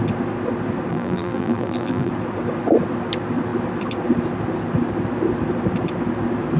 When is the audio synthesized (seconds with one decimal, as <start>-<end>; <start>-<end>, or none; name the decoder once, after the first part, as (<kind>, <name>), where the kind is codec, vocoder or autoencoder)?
0.9-2.1 (vocoder, BigVGAN v2)

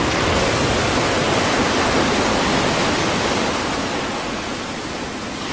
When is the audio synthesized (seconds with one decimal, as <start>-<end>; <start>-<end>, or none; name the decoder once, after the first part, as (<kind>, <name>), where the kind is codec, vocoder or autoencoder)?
1.2-4.5 (vocoder, BigVGAN v2)

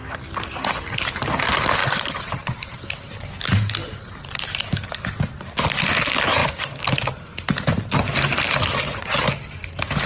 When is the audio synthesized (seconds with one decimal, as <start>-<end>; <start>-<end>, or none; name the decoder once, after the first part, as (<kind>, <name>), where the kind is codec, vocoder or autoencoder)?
1.8-2.8 (vocoder, BigVGAN v2); 3.8-4.9

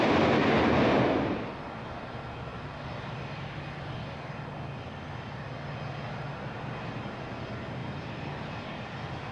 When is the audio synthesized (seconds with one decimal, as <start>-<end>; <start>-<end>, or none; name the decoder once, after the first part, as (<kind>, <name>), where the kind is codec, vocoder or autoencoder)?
7.8-8.9 (vocoder, BigVGAN v2)